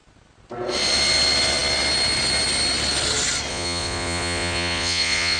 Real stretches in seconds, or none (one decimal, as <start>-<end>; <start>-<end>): 0.0-3.5